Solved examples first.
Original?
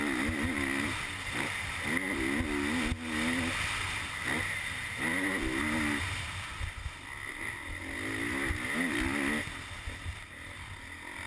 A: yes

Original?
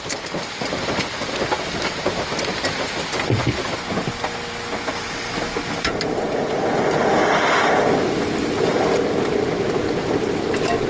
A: yes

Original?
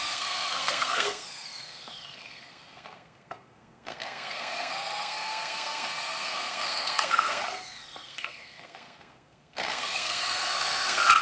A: no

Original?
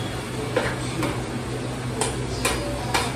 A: yes